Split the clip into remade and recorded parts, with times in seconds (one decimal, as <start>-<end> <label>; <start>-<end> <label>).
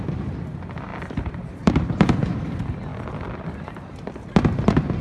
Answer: 0.0-0.9 recorded; 0.9-2.3 remade; 2.3-2.9 recorded; 2.9-4.3 remade; 4.3-5.0 recorded